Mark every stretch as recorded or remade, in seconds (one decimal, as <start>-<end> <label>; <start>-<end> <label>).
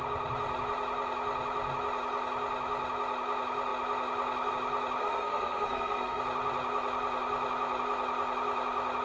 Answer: 0.0-5.0 recorded; 5.0-6.2 remade; 6.2-9.0 recorded